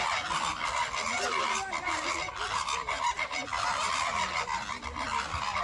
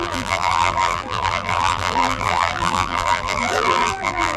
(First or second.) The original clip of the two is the first